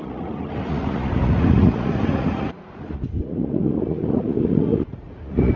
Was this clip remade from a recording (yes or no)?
yes